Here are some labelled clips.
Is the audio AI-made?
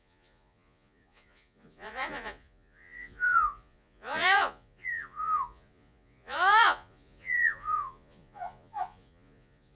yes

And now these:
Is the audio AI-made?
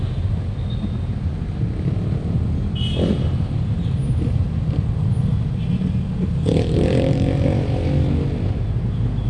no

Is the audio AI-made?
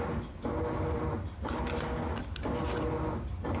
no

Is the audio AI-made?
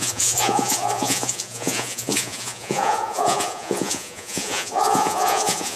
yes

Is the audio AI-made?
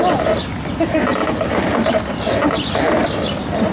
no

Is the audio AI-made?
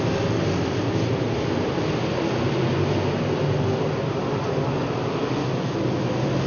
no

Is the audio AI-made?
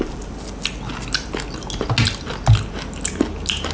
no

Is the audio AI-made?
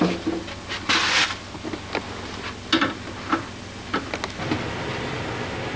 no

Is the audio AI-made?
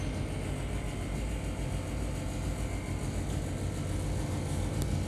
no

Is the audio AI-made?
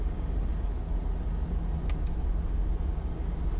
no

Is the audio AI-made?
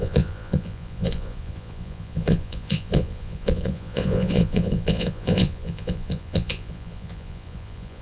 yes